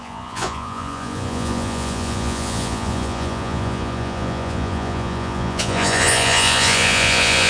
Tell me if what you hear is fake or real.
fake